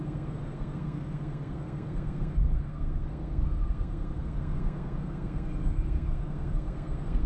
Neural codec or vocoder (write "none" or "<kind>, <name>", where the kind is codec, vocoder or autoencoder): codec, SNAC